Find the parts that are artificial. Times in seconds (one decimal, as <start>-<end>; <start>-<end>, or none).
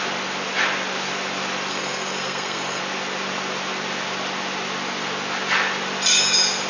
1.7-2.8